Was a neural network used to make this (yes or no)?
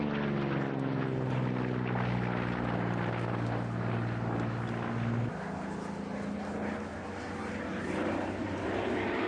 no